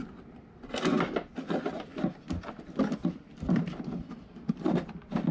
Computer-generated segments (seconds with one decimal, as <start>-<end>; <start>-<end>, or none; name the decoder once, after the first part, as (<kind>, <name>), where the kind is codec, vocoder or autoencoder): 1.9-4.7 (vocoder, BigVGAN v2)